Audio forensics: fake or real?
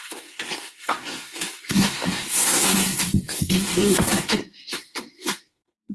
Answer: fake